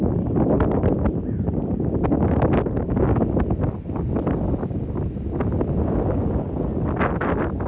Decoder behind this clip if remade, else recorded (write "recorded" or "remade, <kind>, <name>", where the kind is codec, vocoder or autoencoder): recorded